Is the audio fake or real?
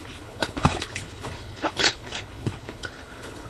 fake